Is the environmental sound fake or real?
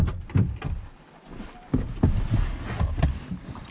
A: real